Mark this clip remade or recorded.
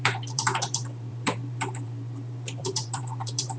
remade